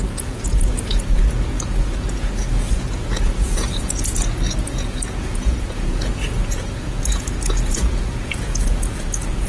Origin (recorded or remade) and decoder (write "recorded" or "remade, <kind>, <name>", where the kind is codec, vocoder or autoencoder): remade, vocoder, Vocos